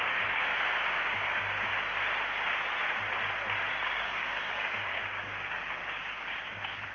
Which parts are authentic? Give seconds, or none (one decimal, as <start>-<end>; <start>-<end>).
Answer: 0.5-1.0; 1.7-3.7